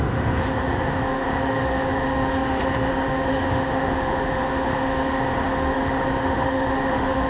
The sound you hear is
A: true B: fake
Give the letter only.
B